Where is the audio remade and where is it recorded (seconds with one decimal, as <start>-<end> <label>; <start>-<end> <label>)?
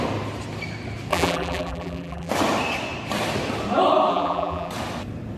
0.0-1.1 recorded; 1.1-2.3 remade; 2.3-4.1 recorded; 4.1-4.7 remade; 4.7-5.4 recorded